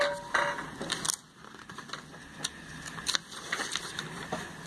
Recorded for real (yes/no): yes